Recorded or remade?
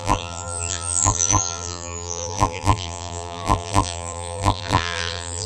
remade